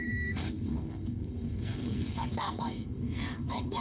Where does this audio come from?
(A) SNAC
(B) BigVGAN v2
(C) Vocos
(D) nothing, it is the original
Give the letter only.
A